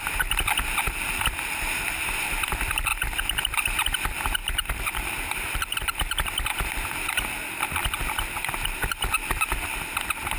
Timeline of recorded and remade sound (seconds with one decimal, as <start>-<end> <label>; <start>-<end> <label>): 0.0-4.4 recorded; 4.4-9.1 remade; 9.1-10.4 recorded